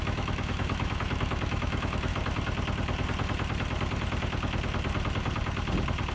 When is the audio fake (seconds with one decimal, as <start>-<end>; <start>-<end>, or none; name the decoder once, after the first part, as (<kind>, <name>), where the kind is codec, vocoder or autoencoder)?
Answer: 0.0-2.1 (autoencoder, DAC-VAE)